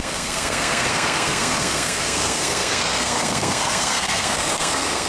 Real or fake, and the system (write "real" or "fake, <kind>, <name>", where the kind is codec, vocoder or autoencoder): fake, codec, SNAC